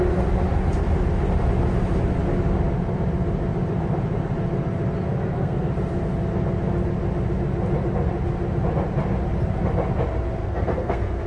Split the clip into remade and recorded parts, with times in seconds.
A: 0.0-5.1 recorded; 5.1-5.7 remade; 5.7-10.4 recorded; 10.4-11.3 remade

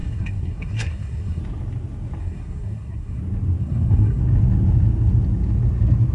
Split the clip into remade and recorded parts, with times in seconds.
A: 0.0-1.4 remade; 1.4-2.2 recorded; 2.2-3.2 remade; 3.2-3.6 recorded; 3.6-4.2 remade; 4.2-6.1 recorded

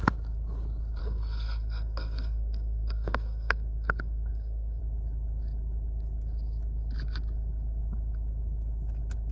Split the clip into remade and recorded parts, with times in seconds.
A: 0.0-1.0 recorded; 1.0-4.8 remade; 4.8-9.3 recorded

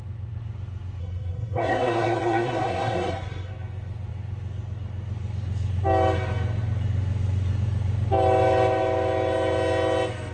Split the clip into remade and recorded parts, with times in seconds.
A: 0.0-1.0 recorded; 1.0-3.5 remade; 3.5-10.3 recorded

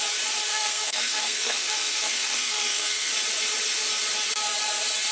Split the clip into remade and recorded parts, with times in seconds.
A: 0.0-0.5 recorded; 0.5-3.1 remade; 3.1-5.1 recorded

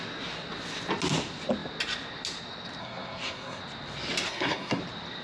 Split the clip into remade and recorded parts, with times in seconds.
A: 0.0-2.8 recorded; 2.8-3.6 remade; 3.6-4.3 recorded; 4.3-4.8 remade; 4.8-5.2 recorded

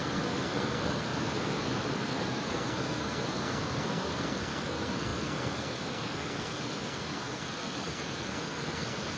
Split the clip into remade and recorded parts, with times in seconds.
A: 0.0-9.2 remade

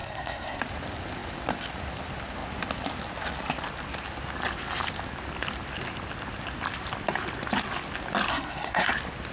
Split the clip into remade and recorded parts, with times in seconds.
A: 0.0-0.6 remade; 0.6-8.3 recorded; 8.3-8.9 remade; 8.9-9.3 recorded